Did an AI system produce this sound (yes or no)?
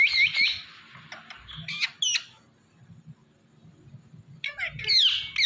no